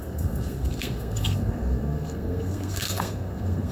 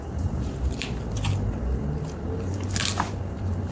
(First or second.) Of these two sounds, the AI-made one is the first